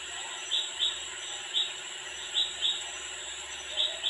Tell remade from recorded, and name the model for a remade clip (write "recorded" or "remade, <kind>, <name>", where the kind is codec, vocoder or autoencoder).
recorded